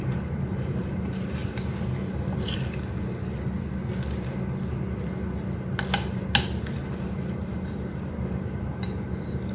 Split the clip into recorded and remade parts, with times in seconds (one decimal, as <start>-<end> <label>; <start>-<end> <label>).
0.0-1.4 remade; 1.4-6.6 recorded; 6.6-9.5 remade